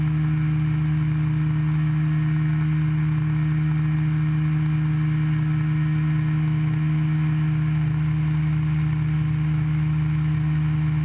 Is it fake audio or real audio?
real